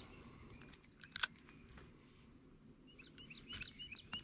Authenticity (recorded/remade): recorded